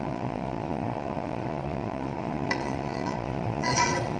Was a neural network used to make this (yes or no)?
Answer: yes